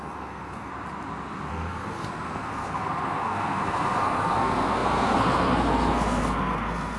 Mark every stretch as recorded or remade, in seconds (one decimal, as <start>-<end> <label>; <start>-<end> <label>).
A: 0.0-0.7 remade; 0.7-1.5 recorded; 1.5-7.0 remade